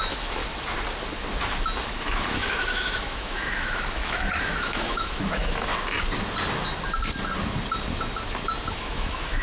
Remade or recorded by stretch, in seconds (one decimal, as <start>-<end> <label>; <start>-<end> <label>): 0.0-0.4 remade; 0.4-2.0 recorded; 2.0-5.7 remade; 5.7-8.7 recorded; 8.7-9.4 remade